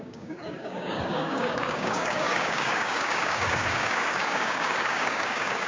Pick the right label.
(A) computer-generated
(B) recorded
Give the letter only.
A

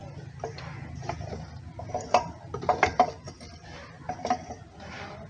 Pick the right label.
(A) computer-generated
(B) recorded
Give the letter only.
B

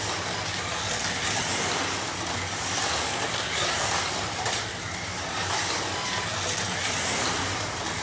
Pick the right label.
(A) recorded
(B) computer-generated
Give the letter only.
A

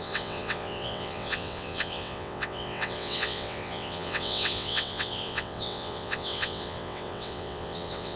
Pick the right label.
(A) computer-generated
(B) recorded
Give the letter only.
A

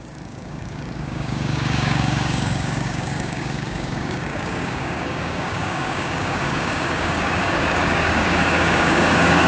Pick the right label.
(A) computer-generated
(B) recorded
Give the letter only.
A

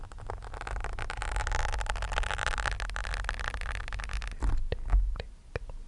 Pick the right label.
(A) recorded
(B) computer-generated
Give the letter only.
A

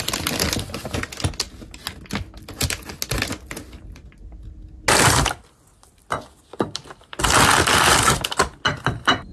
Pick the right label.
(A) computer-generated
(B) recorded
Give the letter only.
B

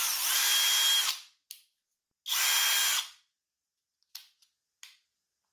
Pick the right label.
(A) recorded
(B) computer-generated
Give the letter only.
A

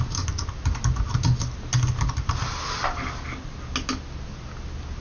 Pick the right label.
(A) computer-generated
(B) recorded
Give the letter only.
B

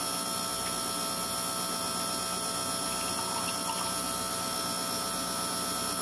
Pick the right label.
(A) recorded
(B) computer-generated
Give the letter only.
A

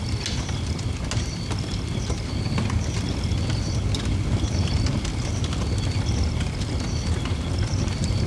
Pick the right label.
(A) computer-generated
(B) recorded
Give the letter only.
B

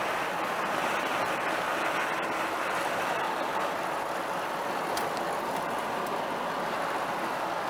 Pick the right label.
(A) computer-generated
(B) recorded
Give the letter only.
B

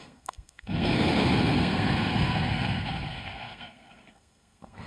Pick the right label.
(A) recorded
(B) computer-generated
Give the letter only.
B